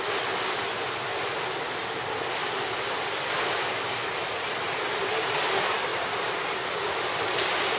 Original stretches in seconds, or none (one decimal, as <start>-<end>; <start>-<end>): 0.0-5.9; 6.7-7.8